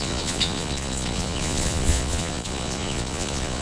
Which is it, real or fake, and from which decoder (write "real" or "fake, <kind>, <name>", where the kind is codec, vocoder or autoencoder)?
fake, vocoder, Vocos